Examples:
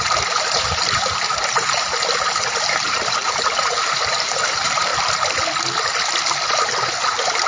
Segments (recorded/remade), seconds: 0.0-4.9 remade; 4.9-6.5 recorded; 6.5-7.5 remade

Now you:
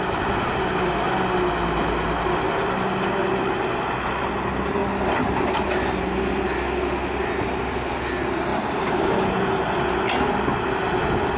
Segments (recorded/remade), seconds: 0.0-8.5 recorded; 8.5-9.8 remade; 9.8-11.4 recorded

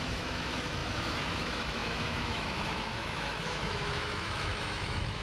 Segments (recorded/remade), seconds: 0.0-5.2 remade

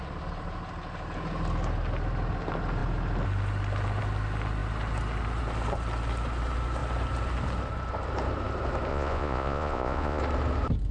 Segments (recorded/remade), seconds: 0.0-8.9 recorded; 8.9-10.2 remade; 10.2-10.9 recorded

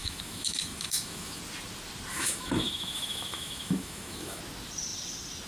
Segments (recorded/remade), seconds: 0.0-1.4 remade; 1.4-2.1 recorded; 2.1-4.4 remade; 4.4-5.5 recorded

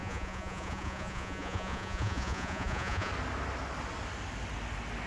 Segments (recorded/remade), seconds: 0.0-3.1 remade; 3.1-5.1 recorded

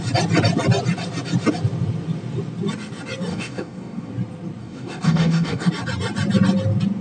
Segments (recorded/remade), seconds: 0.0-3.3 recorded; 3.3-4.1 remade; 4.1-4.6 recorded; 4.6-5.7 remade; 5.7-7.0 recorded

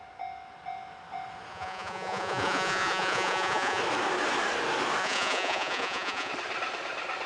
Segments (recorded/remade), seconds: 0.0-1.5 recorded; 1.5-3.8 remade; 3.8-5.0 recorded; 5.0-6.3 remade; 6.3-7.3 recorded